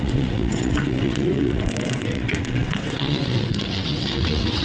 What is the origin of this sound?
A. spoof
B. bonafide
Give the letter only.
A